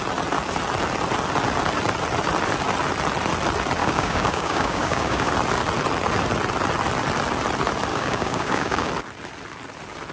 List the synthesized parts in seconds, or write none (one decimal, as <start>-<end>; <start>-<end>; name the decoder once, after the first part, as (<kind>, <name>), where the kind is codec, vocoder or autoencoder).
3.8-5.3 (codec, DAC); 7.9-8.9